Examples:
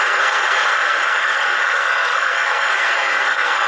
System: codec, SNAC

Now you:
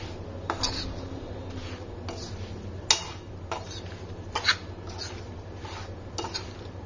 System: none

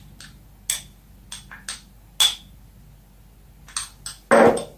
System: none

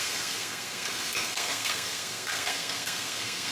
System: codec, SNAC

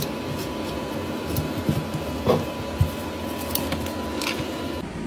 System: none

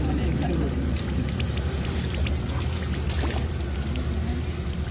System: none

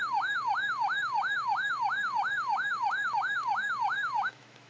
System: autoencoder, DAC-VAE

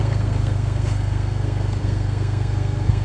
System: codec, SNAC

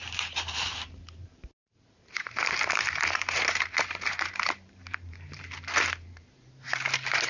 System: vocoder, BigVGAN v2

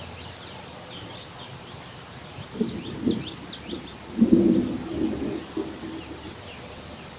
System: none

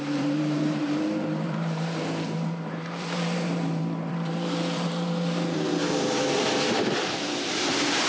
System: vocoder, BigVGAN v2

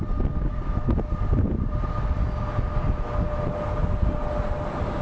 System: none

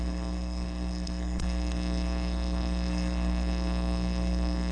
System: codec, SNAC